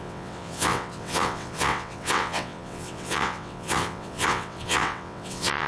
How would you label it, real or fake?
fake